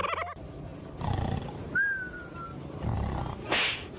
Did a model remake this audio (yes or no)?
no